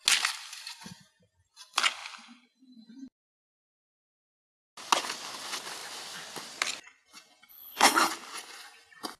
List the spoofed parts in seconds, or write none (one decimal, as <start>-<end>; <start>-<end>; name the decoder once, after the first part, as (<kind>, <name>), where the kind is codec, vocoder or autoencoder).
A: 7.5-8.1 (codec, HILCodec)